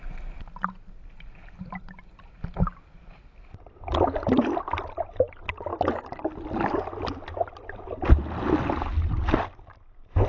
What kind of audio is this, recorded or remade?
recorded